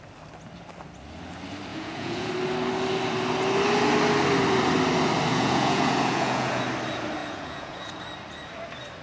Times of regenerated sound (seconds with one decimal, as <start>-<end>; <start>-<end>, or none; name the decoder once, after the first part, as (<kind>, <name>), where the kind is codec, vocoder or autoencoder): 1.7-2.3 (vocoder, Vocos); 5.3-6.6; 7.2-8.0